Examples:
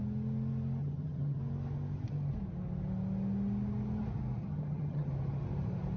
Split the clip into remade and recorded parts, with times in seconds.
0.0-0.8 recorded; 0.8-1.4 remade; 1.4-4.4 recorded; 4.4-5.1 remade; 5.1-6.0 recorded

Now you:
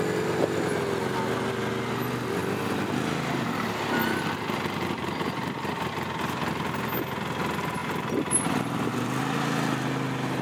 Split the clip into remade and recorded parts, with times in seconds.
0.0-2.4 recorded; 2.4-5.9 remade; 5.9-7.8 recorded; 7.8-9.2 remade; 9.2-10.4 recorded